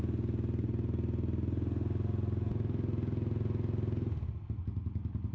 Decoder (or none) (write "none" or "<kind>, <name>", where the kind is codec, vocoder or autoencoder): none